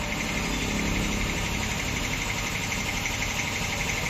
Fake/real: real